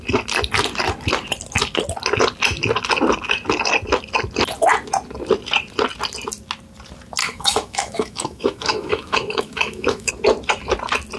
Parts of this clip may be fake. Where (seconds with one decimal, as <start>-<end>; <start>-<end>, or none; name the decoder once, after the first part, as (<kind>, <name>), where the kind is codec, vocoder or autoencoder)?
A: 7.2-10.1 (autoencoder, DAC-VAE)